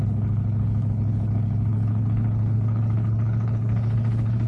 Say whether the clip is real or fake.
fake